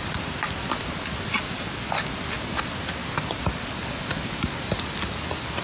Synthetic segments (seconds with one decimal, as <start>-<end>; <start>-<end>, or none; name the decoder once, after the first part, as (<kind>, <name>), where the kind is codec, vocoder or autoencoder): none